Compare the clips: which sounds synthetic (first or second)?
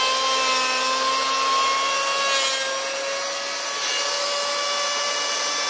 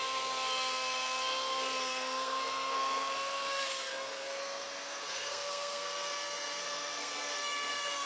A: second